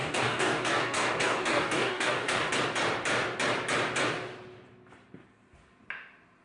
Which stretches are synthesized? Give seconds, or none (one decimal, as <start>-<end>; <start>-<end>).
0.0-2.5

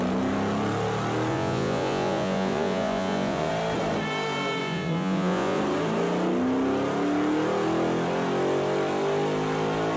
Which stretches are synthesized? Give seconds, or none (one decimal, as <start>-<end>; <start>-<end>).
1.3-3.5; 4.6-5.6